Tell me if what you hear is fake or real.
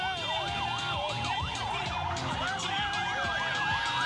real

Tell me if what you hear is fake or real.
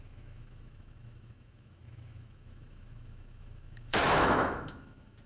fake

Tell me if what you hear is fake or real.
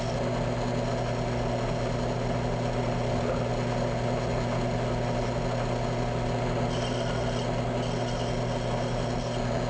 real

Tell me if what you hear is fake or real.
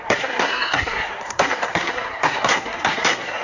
fake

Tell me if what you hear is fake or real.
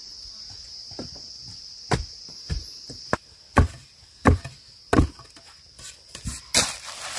real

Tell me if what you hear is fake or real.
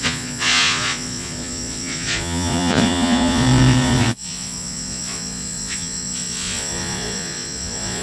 fake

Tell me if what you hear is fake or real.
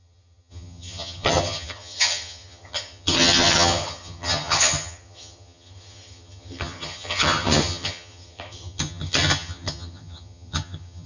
fake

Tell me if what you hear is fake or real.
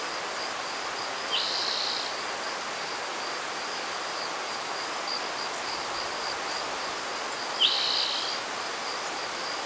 real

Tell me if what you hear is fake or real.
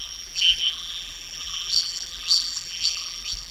fake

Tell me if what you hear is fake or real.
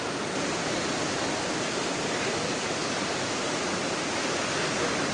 real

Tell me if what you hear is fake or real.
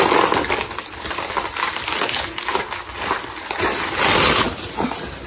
real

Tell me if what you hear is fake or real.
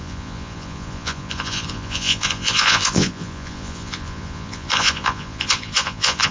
fake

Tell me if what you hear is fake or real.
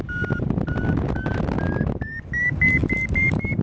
real